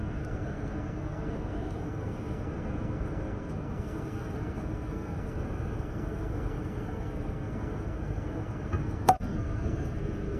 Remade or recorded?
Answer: remade